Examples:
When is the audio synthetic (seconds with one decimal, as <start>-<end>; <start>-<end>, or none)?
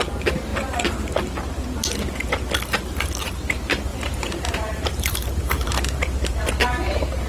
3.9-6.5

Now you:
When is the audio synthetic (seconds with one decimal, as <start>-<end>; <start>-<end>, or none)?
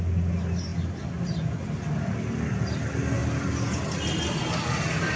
none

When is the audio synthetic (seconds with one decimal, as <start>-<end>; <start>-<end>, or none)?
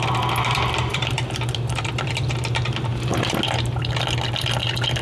0.9-2.3